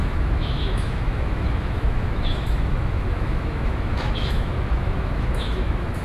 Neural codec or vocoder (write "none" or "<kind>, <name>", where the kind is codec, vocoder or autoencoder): autoencoder, DAC-VAE